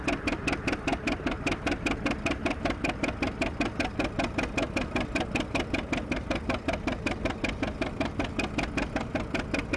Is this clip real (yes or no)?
yes